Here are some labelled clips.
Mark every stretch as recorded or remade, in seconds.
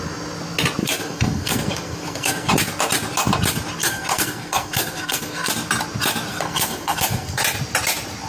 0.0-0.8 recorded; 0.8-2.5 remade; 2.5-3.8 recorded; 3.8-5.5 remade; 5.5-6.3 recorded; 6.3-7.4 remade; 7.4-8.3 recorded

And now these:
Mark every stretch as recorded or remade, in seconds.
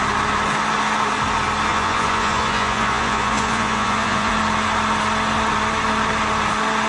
0.0-1.7 recorded; 1.7-4.3 remade; 4.3-6.9 recorded